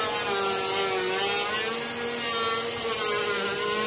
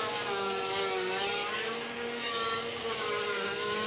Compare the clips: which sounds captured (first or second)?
first